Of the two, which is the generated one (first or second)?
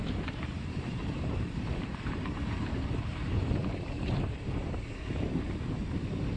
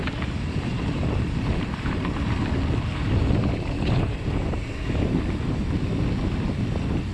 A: first